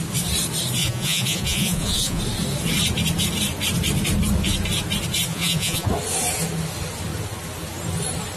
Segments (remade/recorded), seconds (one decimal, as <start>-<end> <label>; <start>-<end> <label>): 0.0-0.8 recorded; 0.8-2.2 remade; 2.2-5.3 recorded; 5.3-5.9 remade; 5.9-8.4 recorded